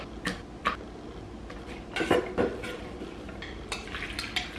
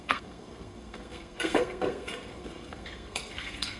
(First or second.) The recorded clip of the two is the first